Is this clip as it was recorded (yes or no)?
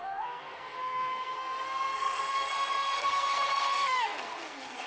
no